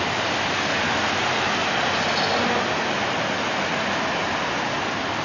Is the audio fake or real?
real